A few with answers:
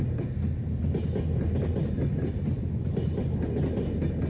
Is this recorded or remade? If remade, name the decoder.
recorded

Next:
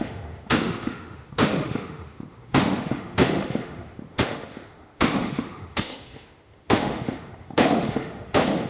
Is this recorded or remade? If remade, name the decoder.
remade, autoencoder, DAC-VAE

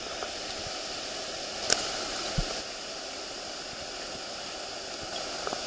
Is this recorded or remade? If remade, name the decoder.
recorded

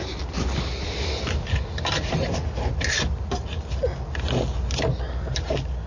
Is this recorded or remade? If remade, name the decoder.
recorded